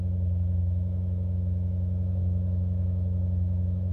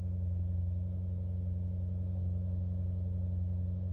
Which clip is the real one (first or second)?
second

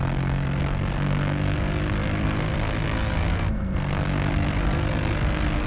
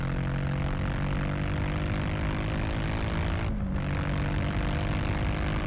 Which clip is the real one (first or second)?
second